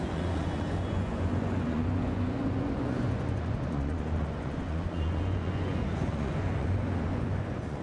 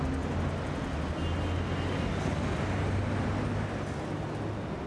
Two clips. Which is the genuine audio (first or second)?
second